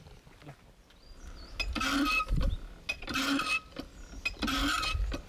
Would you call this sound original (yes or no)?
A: yes